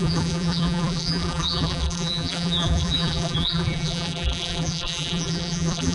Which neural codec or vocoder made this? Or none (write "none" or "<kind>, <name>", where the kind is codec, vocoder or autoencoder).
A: vocoder, BigVGAN v2